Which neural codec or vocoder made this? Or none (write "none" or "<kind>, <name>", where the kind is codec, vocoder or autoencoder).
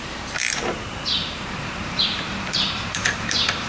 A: vocoder, BigVGAN v2